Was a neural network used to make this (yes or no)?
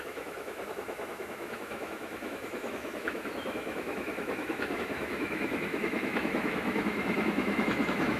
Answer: yes